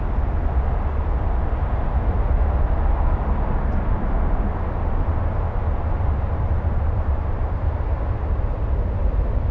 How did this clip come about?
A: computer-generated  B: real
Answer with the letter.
B